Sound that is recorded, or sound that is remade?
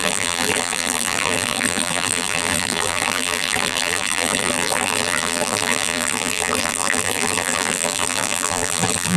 remade